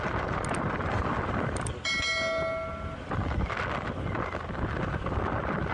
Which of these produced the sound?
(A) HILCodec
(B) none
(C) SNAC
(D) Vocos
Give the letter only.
B